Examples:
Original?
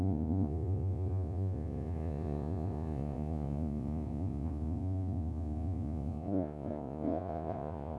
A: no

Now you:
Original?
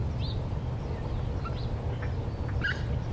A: yes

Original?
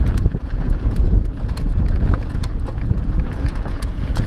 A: no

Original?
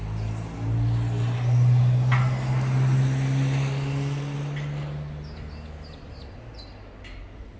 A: yes